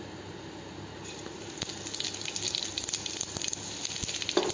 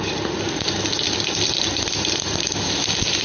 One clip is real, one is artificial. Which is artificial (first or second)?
second